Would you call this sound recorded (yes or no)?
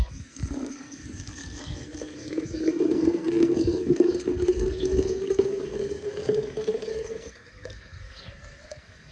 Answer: no